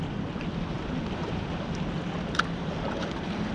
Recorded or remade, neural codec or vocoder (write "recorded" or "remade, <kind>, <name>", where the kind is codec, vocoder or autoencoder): recorded